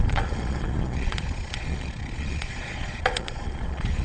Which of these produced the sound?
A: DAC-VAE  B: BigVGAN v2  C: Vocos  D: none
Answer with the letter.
C